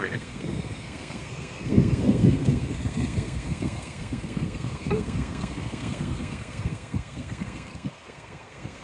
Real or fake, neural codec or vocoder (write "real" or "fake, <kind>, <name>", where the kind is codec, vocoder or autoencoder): fake, codec, SNAC